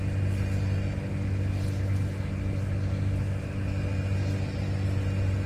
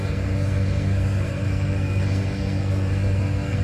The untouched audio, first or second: first